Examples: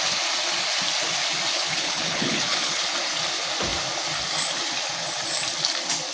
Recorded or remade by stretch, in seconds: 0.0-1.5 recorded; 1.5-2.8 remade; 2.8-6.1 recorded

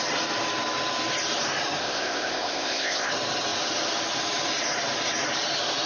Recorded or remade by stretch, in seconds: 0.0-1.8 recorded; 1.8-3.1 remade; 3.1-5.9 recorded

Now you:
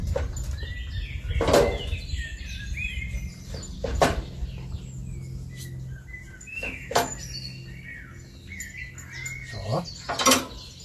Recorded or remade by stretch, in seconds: 0.0-6.5 recorded; 6.5-7.1 remade; 7.1-10.8 recorded

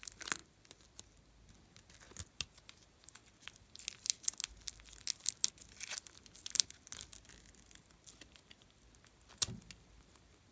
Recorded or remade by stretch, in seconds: 0.0-10.5 recorded